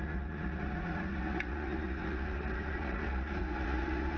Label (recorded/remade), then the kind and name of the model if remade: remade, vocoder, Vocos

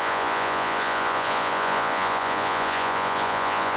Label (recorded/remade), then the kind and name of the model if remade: remade, vocoder, Vocos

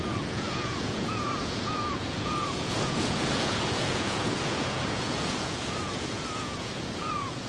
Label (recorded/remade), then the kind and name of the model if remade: remade, vocoder, Vocos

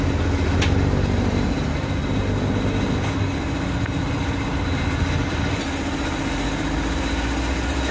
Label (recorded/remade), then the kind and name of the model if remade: recorded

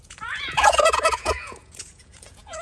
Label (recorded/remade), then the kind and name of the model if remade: remade, vocoder, Vocos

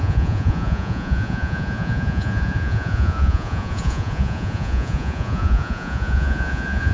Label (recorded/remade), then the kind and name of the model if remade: remade, vocoder, Vocos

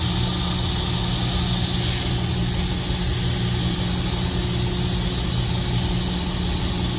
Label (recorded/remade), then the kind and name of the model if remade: recorded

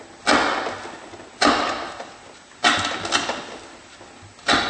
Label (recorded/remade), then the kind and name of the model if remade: recorded